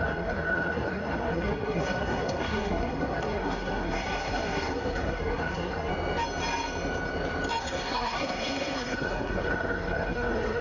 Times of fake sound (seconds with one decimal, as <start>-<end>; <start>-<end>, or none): 0.0-5.9; 7.6-10.6